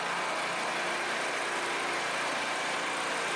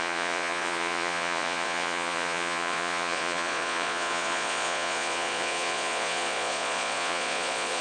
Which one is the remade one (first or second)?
second